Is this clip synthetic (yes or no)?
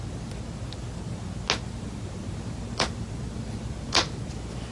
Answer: no